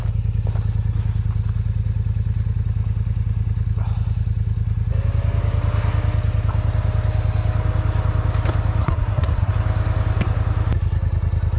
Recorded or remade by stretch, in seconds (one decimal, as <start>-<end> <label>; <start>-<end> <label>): 0.0-8.8 recorded; 8.8-9.5 remade; 9.5-11.6 recorded